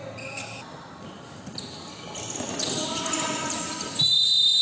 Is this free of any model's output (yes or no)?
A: yes